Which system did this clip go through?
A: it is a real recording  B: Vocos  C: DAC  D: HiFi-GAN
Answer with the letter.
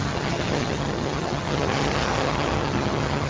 D